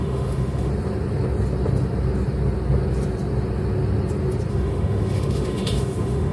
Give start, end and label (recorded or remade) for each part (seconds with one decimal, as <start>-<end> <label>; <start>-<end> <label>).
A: 0.0-0.7 remade; 0.7-4.5 recorded; 4.5-6.3 remade